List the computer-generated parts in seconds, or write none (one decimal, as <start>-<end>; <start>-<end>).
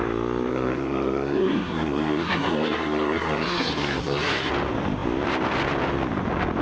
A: 0.5-4.5